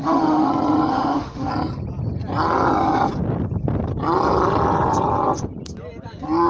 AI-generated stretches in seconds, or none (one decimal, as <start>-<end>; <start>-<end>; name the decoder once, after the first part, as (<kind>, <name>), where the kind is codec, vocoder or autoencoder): 0.0-0.5 (autoencoder, DAC-VAE); 0.9-1.5